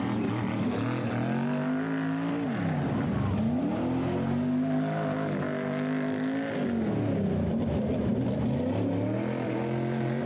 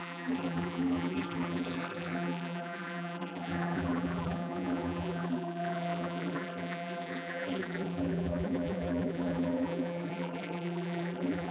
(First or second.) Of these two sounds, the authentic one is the first